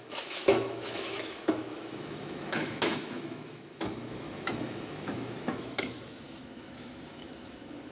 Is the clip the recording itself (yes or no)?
no